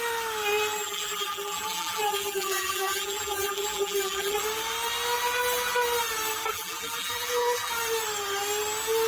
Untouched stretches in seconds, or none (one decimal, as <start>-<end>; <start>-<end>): 0.0-0.7; 4.4-6.5; 7.7-9.1